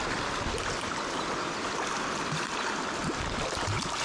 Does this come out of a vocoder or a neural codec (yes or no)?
no